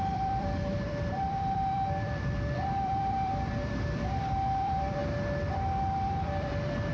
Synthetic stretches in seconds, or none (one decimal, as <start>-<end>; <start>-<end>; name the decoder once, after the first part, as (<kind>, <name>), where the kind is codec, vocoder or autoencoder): 0.0-5.0 (vocoder, BigVGAN v2); 5.5-6.9